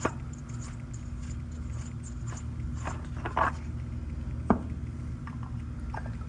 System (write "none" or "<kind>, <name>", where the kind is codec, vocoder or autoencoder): none